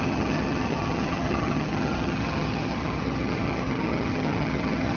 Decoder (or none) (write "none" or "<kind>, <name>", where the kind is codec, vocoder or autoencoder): vocoder, HiFi-GAN